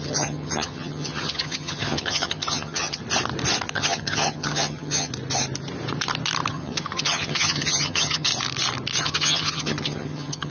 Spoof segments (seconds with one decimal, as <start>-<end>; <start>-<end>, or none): 0.0-3.0; 3.7-5.1; 6.5-8.3; 9.0-10.5